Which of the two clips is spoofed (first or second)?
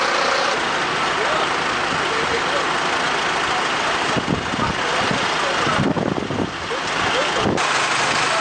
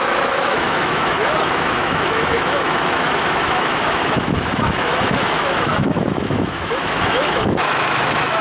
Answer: second